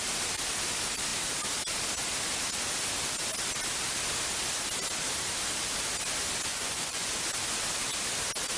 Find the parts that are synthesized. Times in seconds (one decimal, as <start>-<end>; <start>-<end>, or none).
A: 6.5-7.1